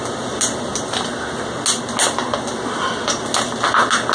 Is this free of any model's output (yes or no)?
yes